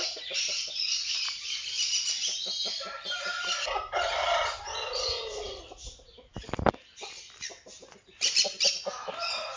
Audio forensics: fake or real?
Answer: real